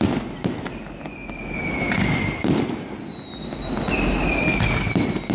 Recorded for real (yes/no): yes